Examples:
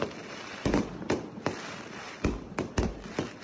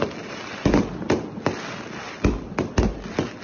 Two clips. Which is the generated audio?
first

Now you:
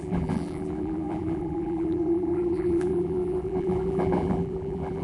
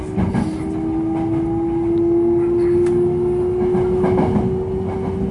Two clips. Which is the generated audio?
first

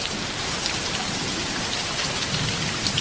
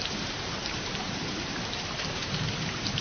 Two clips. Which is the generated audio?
second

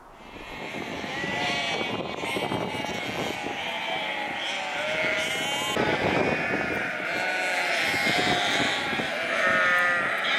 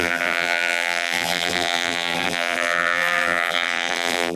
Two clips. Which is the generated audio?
second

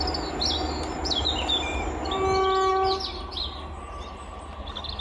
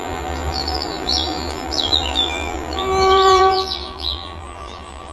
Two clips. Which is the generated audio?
second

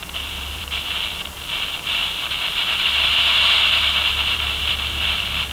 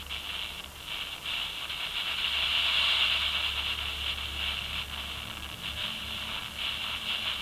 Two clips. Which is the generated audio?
first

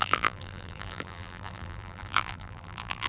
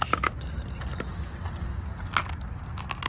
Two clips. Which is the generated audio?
first